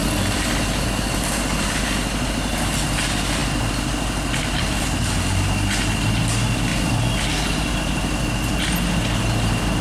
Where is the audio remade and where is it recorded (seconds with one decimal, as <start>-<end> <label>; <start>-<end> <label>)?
0.0-6.7 recorded; 6.7-7.2 remade; 7.2-9.8 recorded